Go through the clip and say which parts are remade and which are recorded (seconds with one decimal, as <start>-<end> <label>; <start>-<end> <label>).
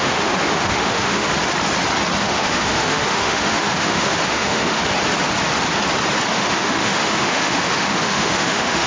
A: 0.0-1.3 remade; 1.3-2.2 recorded; 2.2-4.8 remade; 4.8-6.3 recorded; 6.3-8.9 remade